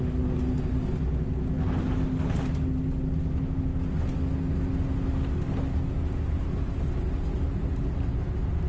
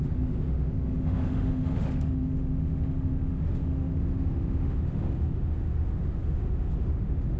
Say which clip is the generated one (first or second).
second